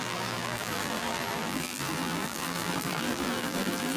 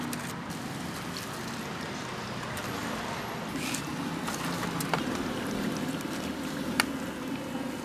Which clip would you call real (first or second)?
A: second